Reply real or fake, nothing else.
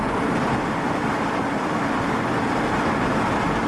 real